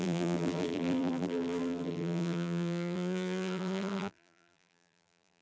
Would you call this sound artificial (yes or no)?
yes